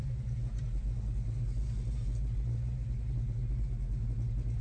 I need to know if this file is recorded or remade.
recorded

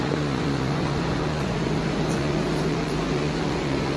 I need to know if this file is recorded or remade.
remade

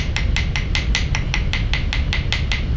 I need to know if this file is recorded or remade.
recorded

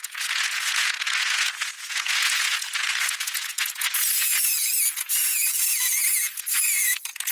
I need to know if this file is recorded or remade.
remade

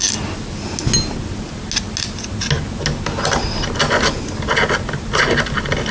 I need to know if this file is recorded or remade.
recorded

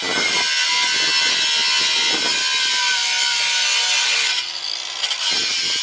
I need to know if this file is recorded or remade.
recorded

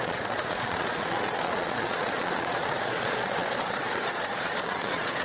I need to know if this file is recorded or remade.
remade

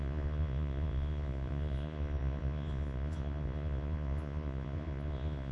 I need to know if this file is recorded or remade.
remade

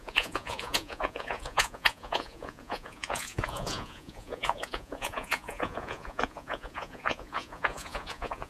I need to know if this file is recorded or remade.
remade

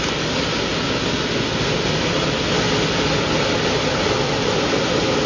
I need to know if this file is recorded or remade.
recorded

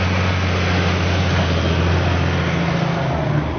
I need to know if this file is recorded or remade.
recorded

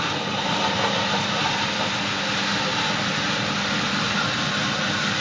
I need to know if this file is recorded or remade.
recorded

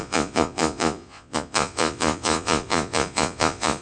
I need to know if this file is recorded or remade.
remade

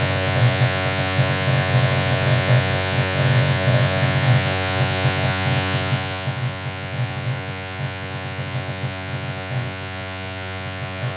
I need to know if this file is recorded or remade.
remade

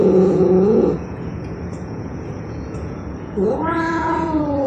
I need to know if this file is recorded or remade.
remade